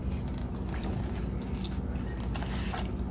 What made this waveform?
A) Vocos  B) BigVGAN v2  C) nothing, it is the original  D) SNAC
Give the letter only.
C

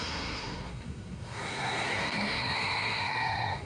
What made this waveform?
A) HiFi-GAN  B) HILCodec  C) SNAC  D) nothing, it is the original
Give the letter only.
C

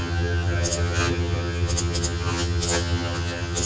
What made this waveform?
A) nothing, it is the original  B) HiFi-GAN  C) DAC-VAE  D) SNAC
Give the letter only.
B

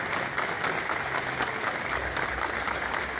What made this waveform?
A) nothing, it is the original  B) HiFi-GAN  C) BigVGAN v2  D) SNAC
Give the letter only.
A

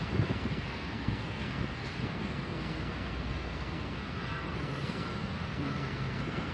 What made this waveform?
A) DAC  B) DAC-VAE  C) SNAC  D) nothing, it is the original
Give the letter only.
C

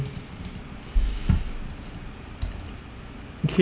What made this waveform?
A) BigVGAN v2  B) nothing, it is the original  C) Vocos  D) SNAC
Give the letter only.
B